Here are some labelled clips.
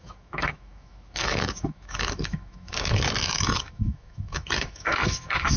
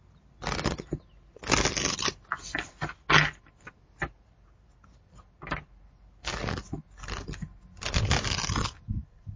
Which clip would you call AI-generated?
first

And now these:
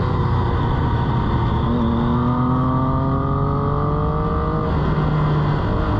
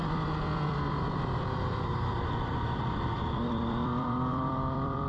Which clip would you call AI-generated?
second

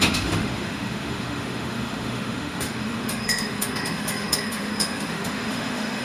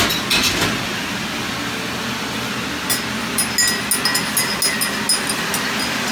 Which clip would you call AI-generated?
first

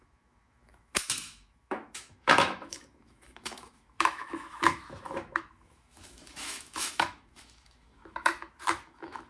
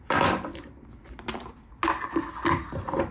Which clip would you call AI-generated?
first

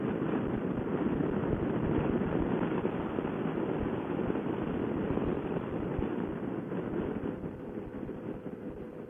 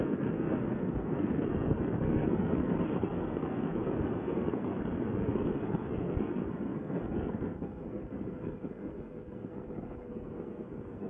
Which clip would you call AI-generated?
second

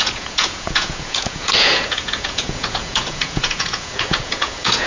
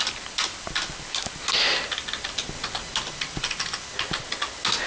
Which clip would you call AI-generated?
first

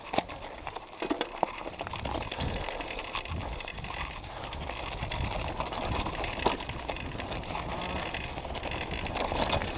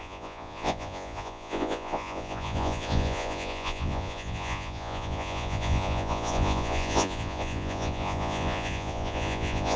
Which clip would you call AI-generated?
second